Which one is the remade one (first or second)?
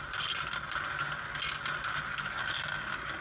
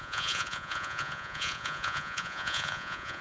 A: second